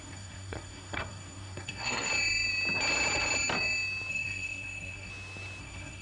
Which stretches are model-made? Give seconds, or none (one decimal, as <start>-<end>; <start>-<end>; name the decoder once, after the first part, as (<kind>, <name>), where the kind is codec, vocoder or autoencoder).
0.0-2.1 (codec, SNAC); 4.1-5.1; 5.6-6.0